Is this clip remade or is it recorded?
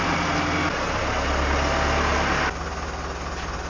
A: recorded